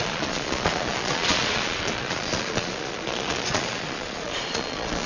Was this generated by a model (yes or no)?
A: yes